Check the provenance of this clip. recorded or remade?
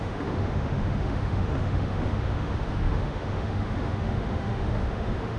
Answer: remade